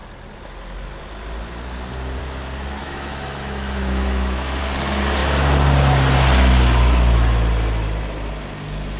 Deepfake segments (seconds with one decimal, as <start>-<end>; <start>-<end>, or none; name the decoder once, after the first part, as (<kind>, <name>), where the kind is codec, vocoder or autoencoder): 2.8-4.6 (autoencoder, DAC-VAE)